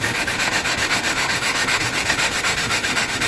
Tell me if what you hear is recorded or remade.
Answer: remade